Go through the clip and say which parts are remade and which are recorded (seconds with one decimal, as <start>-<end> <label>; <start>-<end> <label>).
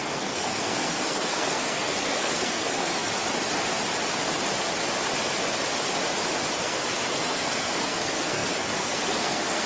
0.0-3.1 remade; 3.1-6.6 recorded; 6.6-9.7 remade